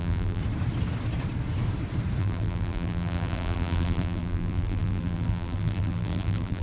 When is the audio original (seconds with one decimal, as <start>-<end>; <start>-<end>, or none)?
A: 0.4-2.2